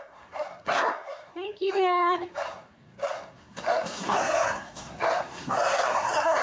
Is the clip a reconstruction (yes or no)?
yes